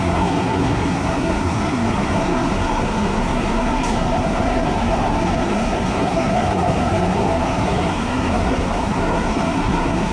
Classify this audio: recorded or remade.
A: remade